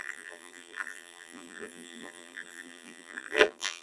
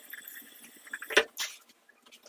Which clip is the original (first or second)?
second